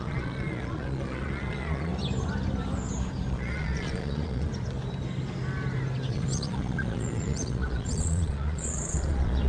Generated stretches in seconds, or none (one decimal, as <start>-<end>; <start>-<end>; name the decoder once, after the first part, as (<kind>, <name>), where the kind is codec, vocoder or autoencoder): 0.0-1.9 (vocoder, Vocos); 3.3-4.5; 6.1-9.5

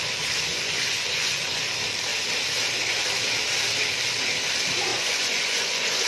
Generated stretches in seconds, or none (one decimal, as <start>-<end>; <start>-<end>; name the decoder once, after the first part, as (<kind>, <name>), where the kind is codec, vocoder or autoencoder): 0.5-1.6 (vocoder, Vocos); 4.9-6.1

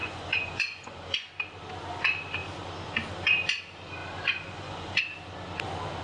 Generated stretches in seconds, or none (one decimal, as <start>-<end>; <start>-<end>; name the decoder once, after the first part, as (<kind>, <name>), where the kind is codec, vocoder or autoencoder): 0.0-1.3 (vocoder, Vocos); 4.0-5.0

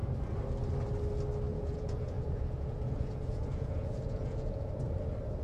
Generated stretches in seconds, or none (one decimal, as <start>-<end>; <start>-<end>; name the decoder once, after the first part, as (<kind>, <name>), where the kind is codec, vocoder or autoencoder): 1.5-4.7 (vocoder, Vocos)

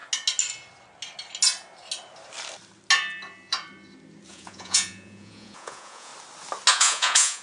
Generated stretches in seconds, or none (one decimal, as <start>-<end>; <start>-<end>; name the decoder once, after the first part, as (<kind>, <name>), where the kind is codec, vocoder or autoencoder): 4.3-6.1 (vocoder, Vocos); 6.7-7.4

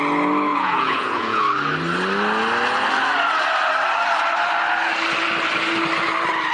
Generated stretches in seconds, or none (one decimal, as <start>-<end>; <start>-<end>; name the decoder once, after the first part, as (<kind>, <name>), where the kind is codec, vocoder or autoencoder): 0.5-1.4 (vocoder, Vocos)